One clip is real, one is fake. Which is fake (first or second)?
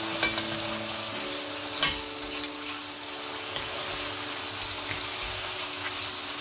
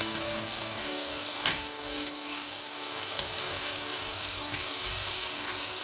second